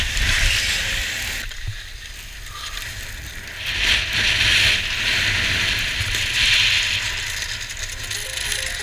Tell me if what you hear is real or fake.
real